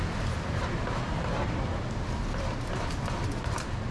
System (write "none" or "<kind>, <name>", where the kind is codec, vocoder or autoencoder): vocoder, BigVGAN v2